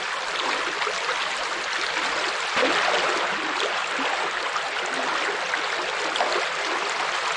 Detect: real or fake real